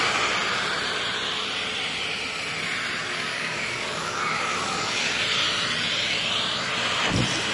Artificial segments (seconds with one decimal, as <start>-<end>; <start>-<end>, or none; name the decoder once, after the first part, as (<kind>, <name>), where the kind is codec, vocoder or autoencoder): 3.0-5.2 (codec, DAC)